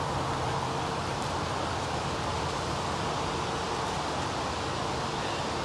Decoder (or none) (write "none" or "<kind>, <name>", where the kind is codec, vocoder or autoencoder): none